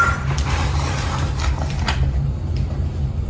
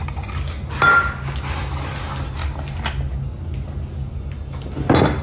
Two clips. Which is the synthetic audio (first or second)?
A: first